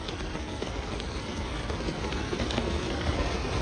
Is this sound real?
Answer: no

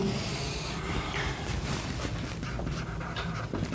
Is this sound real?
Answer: no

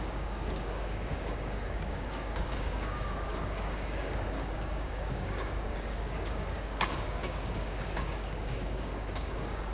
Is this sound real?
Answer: no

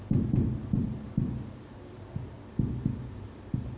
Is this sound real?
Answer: yes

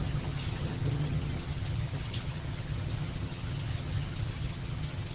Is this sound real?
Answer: no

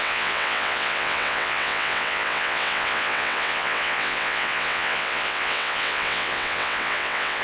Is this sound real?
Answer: no